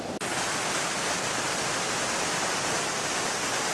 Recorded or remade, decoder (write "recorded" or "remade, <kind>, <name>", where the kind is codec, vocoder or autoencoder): recorded